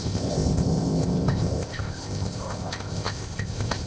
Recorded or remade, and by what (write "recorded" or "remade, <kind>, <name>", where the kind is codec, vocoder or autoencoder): remade, codec, ZipCodec